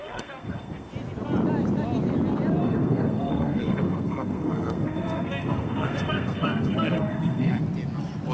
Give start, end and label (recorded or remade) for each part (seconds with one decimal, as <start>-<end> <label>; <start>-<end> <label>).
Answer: 0.0-0.9 remade; 0.9-2.6 recorded; 2.6-7.6 remade; 7.6-8.3 recorded

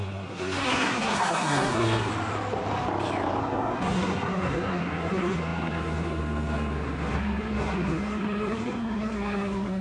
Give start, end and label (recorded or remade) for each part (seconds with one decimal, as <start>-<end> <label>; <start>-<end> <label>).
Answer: 0.0-2.1 remade; 2.1-3.4 recorded; 3.4-9.8 remade

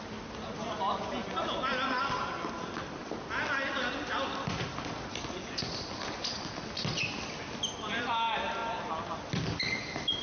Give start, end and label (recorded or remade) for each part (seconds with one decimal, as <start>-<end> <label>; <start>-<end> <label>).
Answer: 0.0-10.2 recorded

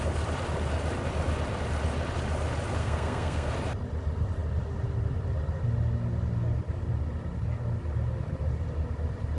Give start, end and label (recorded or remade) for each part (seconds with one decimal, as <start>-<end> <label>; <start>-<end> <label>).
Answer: 0.0-2.8 recorded; 2.8-3.5 remade; 3.5-9.4 recorded

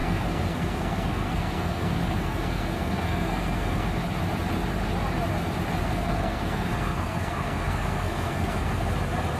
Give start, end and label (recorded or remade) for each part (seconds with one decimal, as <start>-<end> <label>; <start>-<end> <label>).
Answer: 0.0-3.9 remade; 3.9-5.8 recorded; 5.8-8.9 remade; 8.9-9.4 recorded